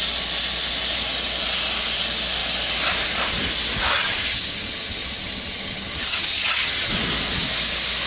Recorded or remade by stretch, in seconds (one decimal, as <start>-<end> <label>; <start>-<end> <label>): 0.0-3.9 recorded; 3.9-6.9 remade; 6.9-8.1 recorded

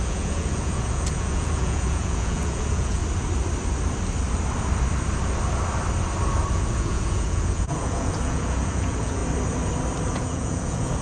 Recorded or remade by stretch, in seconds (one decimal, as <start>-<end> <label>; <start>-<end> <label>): 0.0-3.0 remade; 3.0-6.5 recorded; 6.5-9.2 remade; 9.2-10.1 recorded; 10.1-11.0 remade

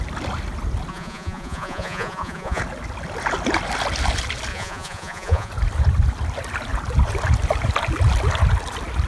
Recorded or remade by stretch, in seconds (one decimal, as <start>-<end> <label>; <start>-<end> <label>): 0.0-0.9 recorded; 0.9-2.6 remade; 2.6-4.5 recorded; 4.5-5.5 remade; 5.5-9.1 recorded

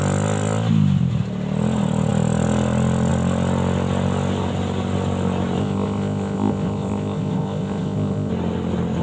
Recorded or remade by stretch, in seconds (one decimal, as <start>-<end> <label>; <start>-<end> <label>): 0.0-5.6 recorded; 5.6-8.3 remade; 8.3-9.0 recorded

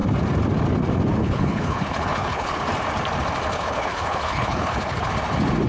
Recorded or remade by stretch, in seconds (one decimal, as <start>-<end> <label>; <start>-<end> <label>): 0.0-1.2 recorded; 1.2-2.6 remade; 2.6-3.5 recorded; 3.5-5.1 remade; 5.1-5.7 recorded

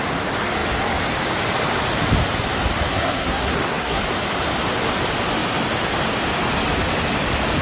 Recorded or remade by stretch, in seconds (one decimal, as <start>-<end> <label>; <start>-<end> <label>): 0.0-2.9 recorded; 2.9-4.0 remade; 4.0-7.6 recorded

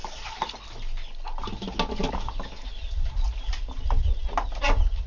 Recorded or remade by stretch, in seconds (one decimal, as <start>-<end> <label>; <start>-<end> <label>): 0.0-5.1 recorded